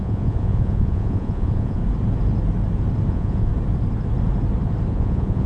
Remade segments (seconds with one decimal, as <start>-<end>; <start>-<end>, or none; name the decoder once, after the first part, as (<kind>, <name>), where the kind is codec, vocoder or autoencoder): 0.0-1.8 (vocoder, Vocos); 3.1-3.5; 4.9-5.5